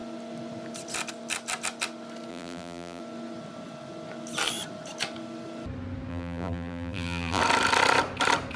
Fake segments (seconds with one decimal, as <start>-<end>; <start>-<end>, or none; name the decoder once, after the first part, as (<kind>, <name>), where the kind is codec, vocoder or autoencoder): 2.3-3.0 (vocoder, BigVGAN v2); 6.1-7.4